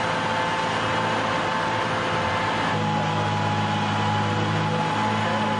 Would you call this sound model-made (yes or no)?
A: no